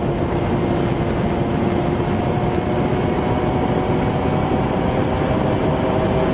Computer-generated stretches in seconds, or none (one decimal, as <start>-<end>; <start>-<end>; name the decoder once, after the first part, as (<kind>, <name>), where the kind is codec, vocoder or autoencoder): none